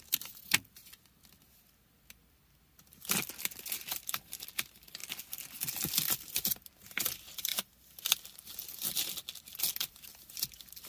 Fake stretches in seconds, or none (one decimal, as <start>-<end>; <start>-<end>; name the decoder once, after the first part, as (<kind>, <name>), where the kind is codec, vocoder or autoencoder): none